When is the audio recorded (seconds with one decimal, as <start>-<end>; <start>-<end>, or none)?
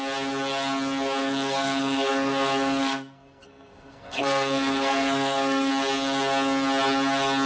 0.0-1.2; 5.7-7.5